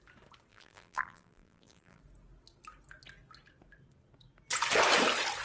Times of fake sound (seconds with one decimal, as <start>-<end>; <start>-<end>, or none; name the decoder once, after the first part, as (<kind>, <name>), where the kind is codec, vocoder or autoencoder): 0.5-2.0 (vocoder, BigVGAN v2)